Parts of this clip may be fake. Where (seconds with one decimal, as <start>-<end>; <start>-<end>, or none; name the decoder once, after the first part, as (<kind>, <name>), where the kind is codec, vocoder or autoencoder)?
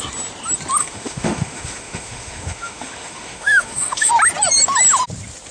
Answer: 0.8-4.1 (autoencoder, DAC-VAE)